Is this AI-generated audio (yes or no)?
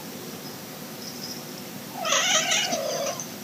no